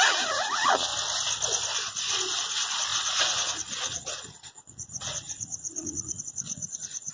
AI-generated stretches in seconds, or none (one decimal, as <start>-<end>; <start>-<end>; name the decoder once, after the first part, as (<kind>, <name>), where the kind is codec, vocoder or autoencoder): 0.0-0.9 (vocoder, Vocos); 2.4-7.1